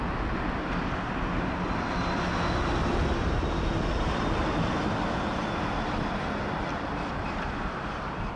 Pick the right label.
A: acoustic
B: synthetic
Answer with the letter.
A